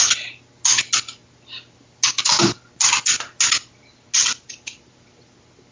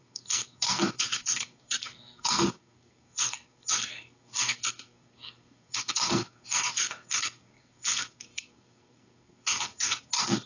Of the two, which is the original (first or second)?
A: first